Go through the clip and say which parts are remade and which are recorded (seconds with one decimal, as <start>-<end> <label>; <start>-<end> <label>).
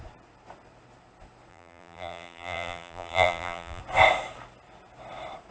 0.0-1.5 recorded; 1.5-3.8 remade; 3.8-5.5 recorded